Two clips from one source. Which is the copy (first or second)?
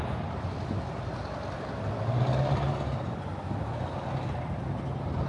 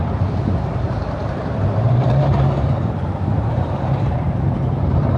second